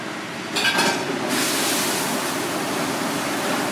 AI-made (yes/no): yes